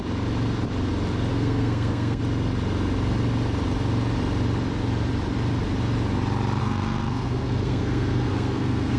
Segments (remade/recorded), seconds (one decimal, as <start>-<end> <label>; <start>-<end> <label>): 0.0-1.3 recorded; 1.3-2.2 remade; 2.2-6.6 recorded; 6.6-9.0 remade